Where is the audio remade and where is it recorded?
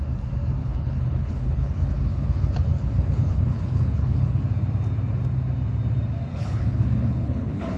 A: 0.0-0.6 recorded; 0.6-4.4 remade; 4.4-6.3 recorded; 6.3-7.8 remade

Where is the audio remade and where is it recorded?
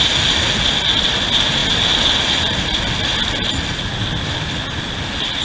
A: 0.0-5.4 recorded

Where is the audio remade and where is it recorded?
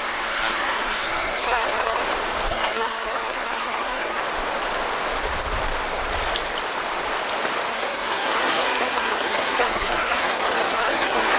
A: 0.0-2.0 remade; 2.0-2.5 recorded; 2.5-4.2 remade; 4.2-7.7 recorded; 7.7-11.4 remade